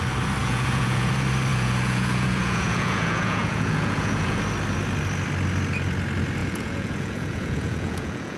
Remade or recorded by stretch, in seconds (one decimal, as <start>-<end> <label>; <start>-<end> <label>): 0.0-0.4 recorded; 0.4-1.1 remade; 1.1-1.5 recorded; 1.5-4.4 remade; 4.4-6.4 recorded; 6.4-8.4 remade